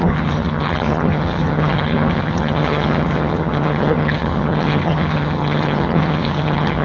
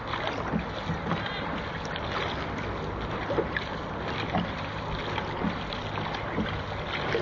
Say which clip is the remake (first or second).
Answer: first